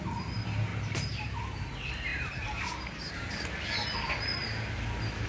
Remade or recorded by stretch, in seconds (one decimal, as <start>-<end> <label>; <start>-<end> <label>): 0.0-2.1 recorded; 2.1-3.3 remade; 3.3-5.3 recorded